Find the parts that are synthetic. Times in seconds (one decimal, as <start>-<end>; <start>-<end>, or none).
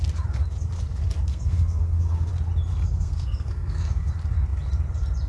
1.3-2.3; 2.7-4.1